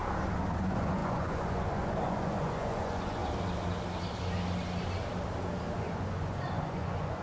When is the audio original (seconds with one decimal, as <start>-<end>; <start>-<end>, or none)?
0.0-0.6; 3.2-5.8